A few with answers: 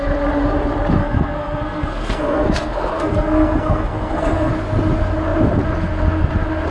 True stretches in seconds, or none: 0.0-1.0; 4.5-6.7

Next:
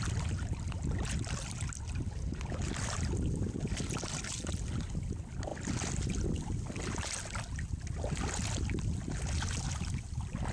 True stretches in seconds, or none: 0.0-10.5

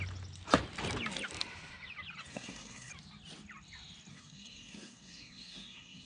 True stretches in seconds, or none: 0.0-2.3; 2.9-4.1

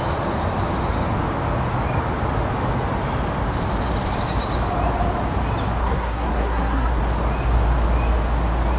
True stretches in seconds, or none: 0.0-5.8; 7.0-8.8